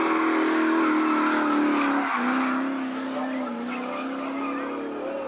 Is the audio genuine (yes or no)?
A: yes